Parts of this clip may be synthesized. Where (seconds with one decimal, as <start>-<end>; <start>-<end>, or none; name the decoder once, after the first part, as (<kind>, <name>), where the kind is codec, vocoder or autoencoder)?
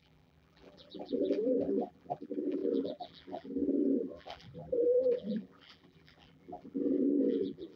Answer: 0.0-7.8 (vocoder, BigVGAN v2)